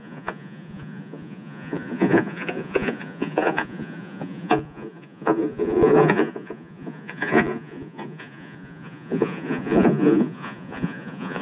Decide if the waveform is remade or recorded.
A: remade